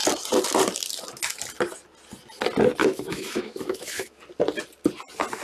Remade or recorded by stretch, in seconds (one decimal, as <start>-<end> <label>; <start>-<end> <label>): 0.0-2.8 recorded; 2.8-4.2 remade; 4.2-5.4 recorded